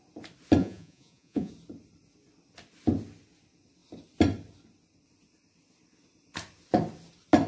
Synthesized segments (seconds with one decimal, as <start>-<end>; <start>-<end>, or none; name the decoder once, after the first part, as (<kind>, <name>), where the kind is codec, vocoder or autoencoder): 0.6-1.5 (vocoder, Vocos)